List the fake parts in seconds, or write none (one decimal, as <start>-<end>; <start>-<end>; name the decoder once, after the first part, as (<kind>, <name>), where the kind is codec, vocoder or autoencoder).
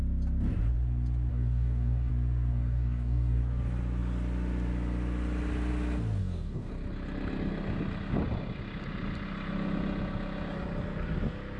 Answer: 1.3-2.1 (codec, DAC); 2.5-3.4; 6.2-6.7